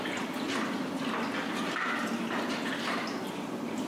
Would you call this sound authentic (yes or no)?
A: yes